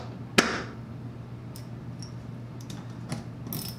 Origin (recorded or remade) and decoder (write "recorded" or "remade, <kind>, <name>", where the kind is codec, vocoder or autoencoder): recorded